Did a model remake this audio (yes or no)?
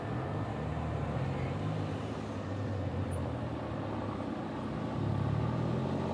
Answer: no